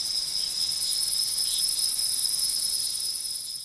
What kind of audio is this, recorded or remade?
recorded